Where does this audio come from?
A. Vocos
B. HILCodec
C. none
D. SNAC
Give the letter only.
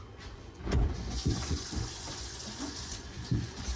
A